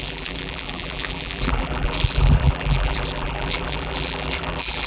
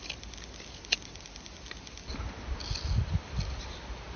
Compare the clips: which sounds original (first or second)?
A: second